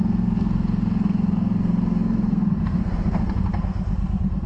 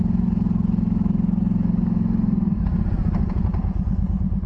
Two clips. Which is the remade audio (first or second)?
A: first